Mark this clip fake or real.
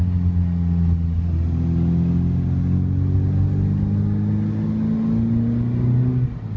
real